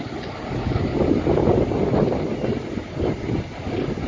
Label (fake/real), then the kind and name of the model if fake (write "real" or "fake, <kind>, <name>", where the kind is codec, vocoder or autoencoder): real